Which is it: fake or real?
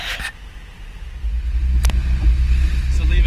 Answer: real